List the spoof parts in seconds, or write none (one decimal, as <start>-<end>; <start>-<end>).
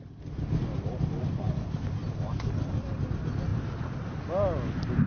none